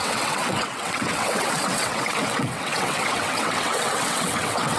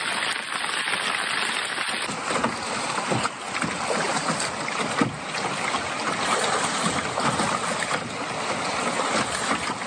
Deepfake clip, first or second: first